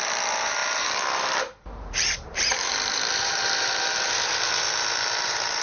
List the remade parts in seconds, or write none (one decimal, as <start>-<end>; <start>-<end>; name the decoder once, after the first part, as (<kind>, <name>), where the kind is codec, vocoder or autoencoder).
0.0-5.6 (vocoder, BigVGAN v2)